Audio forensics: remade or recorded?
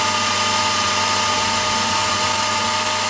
recorded